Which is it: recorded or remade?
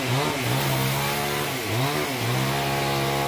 recorded